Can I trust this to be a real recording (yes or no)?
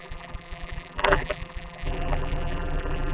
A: no